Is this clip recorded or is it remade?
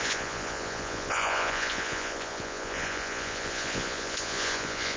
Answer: remade